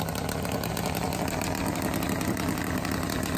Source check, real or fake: fake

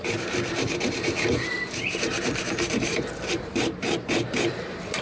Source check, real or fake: fake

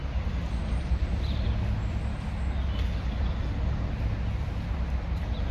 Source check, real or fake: real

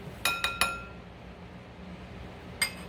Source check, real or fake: real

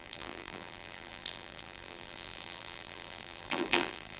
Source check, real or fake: fake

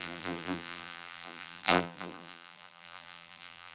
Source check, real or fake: fake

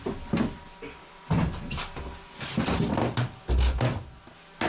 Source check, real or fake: real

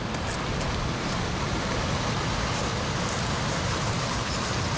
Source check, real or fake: real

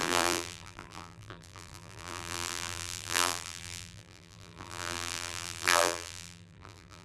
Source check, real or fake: fake